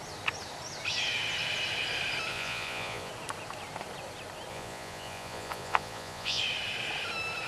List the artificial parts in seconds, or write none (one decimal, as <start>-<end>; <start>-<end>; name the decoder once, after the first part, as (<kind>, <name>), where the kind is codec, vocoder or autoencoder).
2.3-3.1 (vocoder, Vocos); 4.5-6.4